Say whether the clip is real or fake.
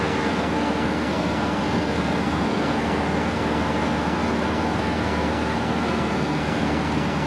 fake